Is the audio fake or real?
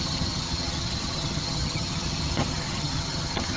fake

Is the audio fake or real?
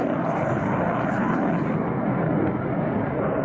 real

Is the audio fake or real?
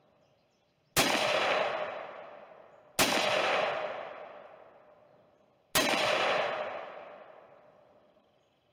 real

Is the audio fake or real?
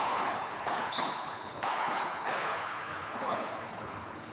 fake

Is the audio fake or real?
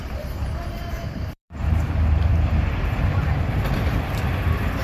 fake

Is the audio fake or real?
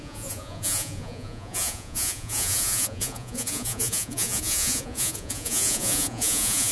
fake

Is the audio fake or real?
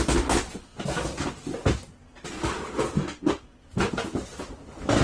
real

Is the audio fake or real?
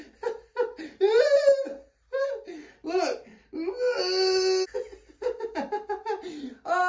real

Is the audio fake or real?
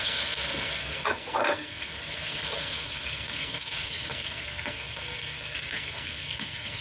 fake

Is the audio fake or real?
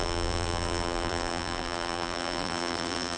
fake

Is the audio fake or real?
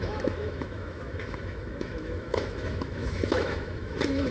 fake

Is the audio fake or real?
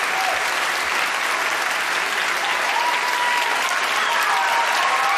real